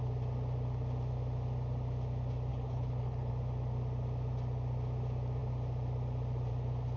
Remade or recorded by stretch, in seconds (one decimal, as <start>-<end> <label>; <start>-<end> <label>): 0.0-2.5 recorded; 2.5-3.3 remade; 3.3-7.0 recorded

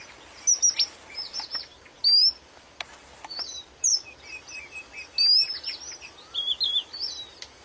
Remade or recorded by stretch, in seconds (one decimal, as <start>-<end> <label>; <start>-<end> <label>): 0.0-7.6 recorded

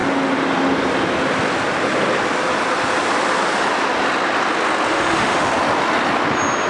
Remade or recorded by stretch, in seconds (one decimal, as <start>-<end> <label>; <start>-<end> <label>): 0.0-4.9 recorded; 4.9-5.5 remade; 5.5-6.7 recorded

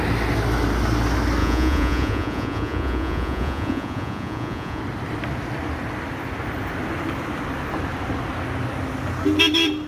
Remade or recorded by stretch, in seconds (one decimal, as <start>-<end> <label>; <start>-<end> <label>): 0.0-1.4 recorded; 1.4-4.8 remade; 4.8-9.9 recorded

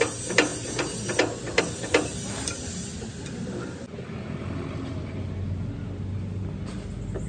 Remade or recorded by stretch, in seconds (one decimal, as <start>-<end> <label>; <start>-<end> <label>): 0.0-7.3 recorded

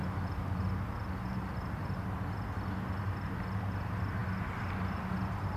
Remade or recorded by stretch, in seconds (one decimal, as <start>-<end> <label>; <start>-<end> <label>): 0.0-5.6 recorded

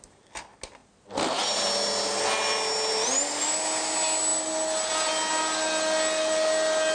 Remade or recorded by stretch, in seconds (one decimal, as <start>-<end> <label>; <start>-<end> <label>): 0.0-6.9 recorded